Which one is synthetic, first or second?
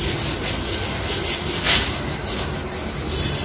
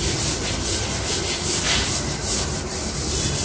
second